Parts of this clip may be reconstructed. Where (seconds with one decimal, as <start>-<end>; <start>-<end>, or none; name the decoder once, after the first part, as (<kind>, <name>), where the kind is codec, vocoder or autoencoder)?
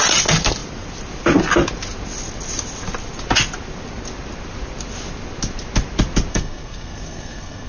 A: 6.3-7.7 (codec, SNAC)